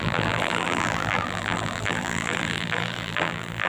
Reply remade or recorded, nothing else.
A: remade